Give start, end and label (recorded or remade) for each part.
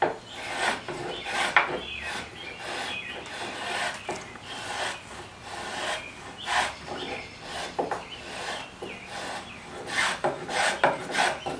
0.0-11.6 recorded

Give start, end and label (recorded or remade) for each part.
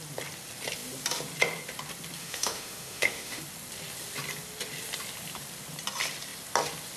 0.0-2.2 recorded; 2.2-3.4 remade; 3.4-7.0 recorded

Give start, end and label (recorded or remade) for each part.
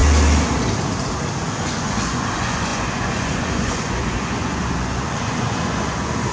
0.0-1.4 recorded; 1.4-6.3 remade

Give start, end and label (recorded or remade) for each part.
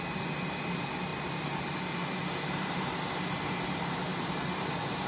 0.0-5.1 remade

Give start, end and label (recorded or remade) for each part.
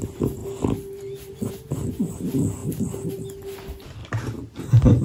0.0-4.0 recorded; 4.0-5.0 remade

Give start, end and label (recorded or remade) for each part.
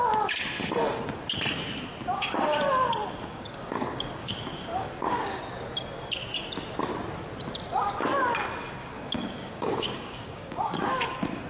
0.0-3.3 recorded; 3.3-4.3 remade; 4.3-4.7 recorded; 4.7-5.4 remade; 5.4-8.8 recorded; 8.8-10.9 remade; 10.9-11.5 recorded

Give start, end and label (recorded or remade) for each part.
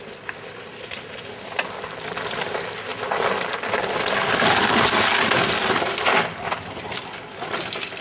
0.0-8.0 recorded